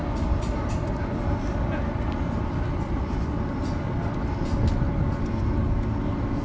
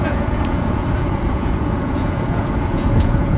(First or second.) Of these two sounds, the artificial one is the second